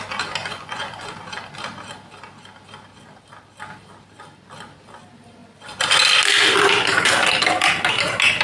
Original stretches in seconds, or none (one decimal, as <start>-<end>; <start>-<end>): 0.0-0.4; 1.2-8.4